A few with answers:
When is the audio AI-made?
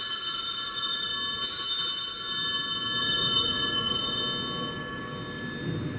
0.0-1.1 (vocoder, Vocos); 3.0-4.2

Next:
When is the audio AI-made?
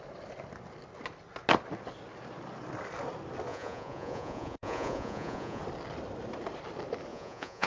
3.5-5.6 (vocoder, Vocos); 7.1-7.7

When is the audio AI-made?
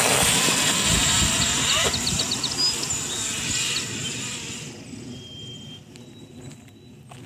none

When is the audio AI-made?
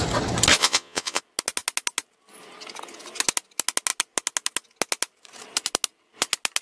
0.6-1.2 (vocoder, Vocos)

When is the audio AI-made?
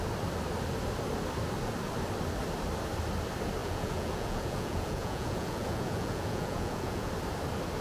3.6-7.1 (vocoder, Vocos)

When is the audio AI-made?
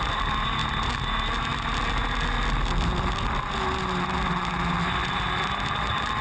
none